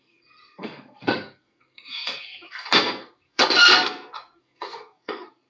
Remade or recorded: remade